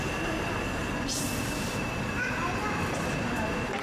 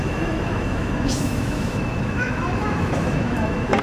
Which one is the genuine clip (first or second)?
first